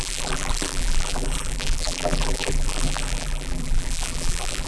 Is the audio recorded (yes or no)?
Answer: no